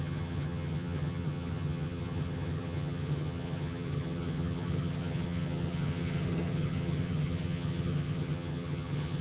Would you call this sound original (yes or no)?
no